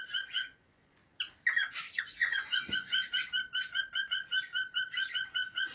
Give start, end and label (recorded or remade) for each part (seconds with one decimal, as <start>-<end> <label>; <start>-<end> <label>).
0.0-1.0 remade; 1.0-2.0 recorded; 2.0-3.0 remade; 3.0-4.1 recorded; 4.1-4.5 remade; 4.5-5.1 recorded; 5.1-5.7 remade